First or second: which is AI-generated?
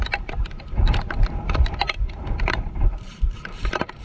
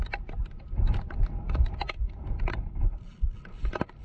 first